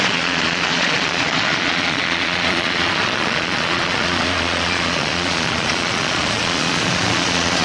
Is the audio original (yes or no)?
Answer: no